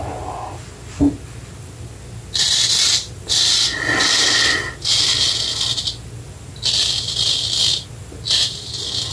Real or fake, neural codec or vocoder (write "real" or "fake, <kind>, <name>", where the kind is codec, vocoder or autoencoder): real